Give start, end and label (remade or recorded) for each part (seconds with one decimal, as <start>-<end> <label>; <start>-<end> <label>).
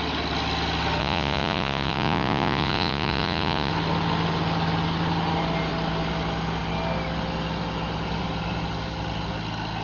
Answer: 0.0-1.0 recorded; 1.0-3.7 remade; 3.7-9.8 recorded